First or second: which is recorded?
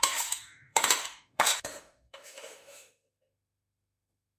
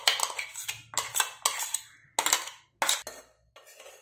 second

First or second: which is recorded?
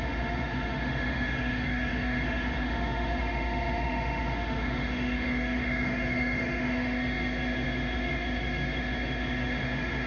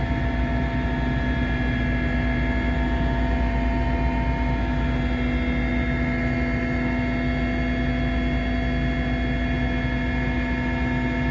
second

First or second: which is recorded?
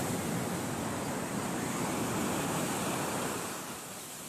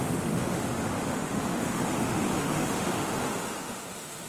first